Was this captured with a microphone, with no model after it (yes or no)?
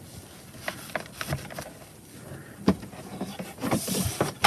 no